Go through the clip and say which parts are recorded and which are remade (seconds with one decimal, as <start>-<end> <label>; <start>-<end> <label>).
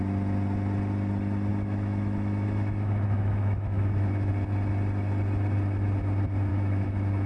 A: 0.0-1.5 recorded; 1.5-4.3 remade; 4.3-6.5 recorded; 6.5-7.3 remade